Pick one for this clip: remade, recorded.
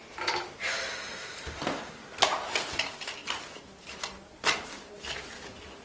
recorded